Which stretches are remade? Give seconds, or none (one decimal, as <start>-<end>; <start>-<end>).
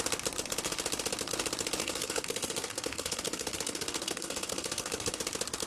1.8-5.2